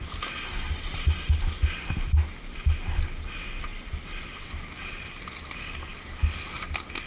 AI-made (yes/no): no